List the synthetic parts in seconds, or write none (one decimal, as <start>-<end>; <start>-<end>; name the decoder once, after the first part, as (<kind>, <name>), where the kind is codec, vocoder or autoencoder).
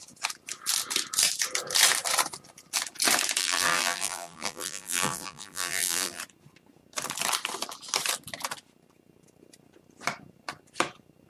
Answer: 3.4-6.2 (vocoder, BigVGAN v2)